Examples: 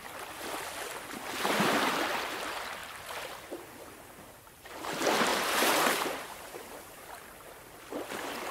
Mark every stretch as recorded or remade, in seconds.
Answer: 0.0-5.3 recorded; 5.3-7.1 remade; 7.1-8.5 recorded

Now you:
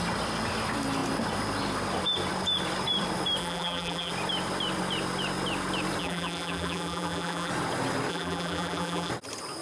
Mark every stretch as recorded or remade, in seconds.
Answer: 0.0-3.4 recorded; 3.4-4.1 remade; 4.1-6.0 recorded; 6.0-7.5 remade; 7.5-8.1 recorded; 8.1-9.1 remade; 9.1-9.6 recorded

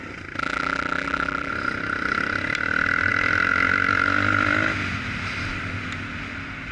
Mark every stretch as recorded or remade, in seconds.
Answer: 0.0-0.4 recorded; 0.4-1.5 remade; 1.5-6.7 recorded

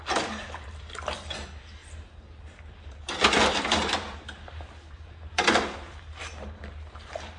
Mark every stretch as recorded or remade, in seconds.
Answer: 0.0-1.8 recorded; 1.8-6.2 remade; 6.2-7.4 recorded